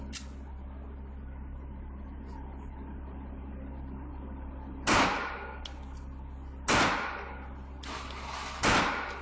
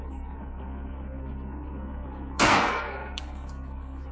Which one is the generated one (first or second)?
second